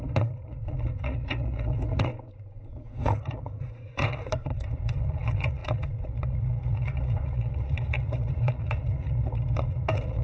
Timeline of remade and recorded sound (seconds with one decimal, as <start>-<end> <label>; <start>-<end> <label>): 0.0-2.1 remade; 2.1-2.7 recorded; 2.7-10.2 remade